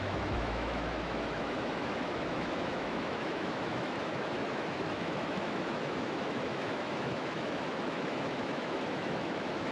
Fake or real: fake